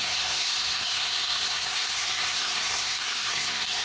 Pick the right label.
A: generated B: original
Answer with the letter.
A